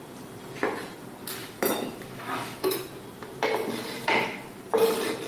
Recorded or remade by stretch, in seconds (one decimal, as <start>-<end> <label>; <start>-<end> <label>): 0.0-1.4 recorded; 1.4-2.8 remade; 2.8-5.3 recorded